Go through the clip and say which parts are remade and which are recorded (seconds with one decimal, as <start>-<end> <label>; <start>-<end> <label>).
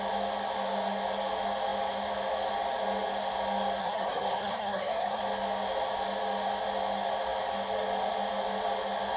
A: 0.0-3.8 recorded; 3.8-5.2 remade; 5.2-9.2 recorded